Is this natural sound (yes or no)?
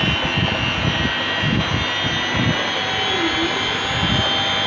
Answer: yes